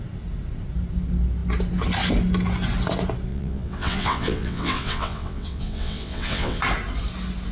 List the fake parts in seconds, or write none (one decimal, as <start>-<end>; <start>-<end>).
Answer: 3.3-6.6